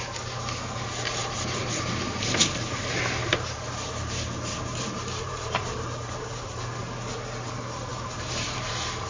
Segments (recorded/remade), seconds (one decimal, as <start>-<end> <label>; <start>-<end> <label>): 0.0-3.2 recorded; 3.2-6.6 remade; 6.6-7.9 recorded; 7.9-8.7 remade; 8.7-9.1 recorded